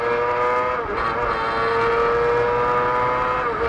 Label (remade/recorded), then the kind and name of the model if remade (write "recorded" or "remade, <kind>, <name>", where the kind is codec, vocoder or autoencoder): recorded